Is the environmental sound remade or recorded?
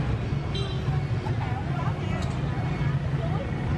recorded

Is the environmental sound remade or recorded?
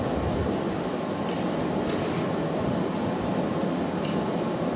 recorded